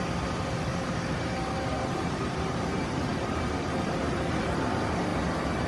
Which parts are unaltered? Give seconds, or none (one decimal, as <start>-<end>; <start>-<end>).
0.0-0.7; 3.5-5.7